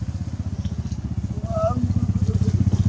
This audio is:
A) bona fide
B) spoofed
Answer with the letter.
A